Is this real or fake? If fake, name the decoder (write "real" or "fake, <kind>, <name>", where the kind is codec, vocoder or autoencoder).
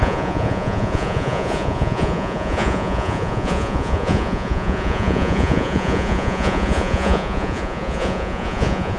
fake, vocoder, Vocos